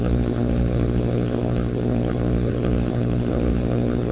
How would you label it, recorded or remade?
remade